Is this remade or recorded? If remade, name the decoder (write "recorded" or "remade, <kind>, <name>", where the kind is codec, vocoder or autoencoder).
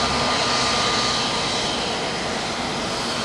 recorded